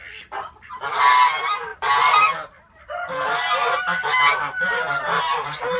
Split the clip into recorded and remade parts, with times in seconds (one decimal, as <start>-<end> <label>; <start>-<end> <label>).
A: 0.0-5.8 recorded